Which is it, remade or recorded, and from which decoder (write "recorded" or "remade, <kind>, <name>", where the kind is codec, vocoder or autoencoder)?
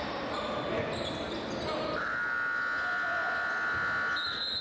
recorded